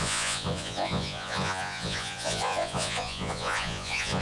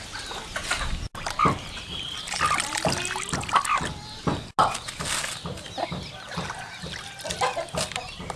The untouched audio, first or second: second